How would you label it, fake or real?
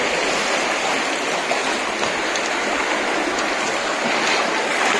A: real